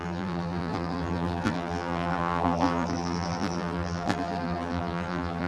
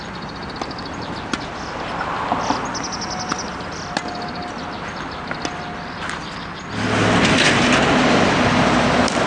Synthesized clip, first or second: first